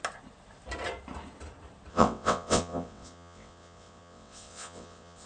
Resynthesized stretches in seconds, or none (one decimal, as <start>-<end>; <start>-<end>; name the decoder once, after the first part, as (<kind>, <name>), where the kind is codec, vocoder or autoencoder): 1.9-5.3 (vocoder, WaveNeXt)